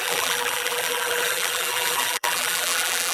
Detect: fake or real fake